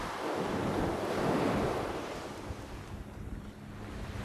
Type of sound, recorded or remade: recorded